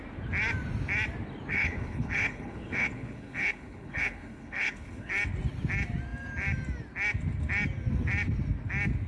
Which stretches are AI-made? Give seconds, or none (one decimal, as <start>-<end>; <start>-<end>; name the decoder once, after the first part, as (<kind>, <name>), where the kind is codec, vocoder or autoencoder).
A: 1.5-5.1 (codec, HILCodec)